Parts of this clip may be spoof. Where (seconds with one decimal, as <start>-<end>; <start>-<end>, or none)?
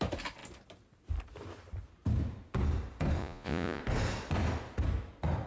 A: 3.2-3.8